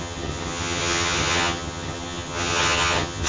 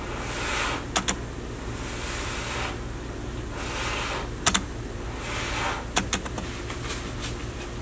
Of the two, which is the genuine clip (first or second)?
second